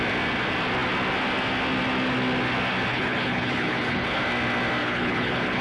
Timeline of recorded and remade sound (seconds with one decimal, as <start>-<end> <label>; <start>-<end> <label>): 0.0-2.9 recorded; 2.9-4.2 remade; 4.2-4.8 recorded; 4.8-5.6 remade